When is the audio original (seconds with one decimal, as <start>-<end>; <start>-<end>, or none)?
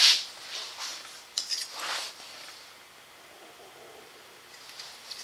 0.0-5.2